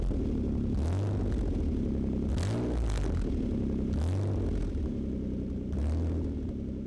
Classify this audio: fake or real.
real